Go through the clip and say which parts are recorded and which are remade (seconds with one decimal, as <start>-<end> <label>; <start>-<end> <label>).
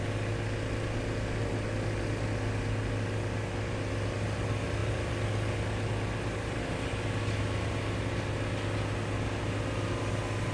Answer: 0.0-10.5 recorded